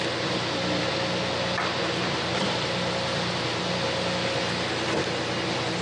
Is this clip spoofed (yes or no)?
no